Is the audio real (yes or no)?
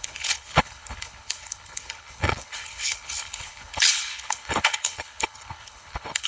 no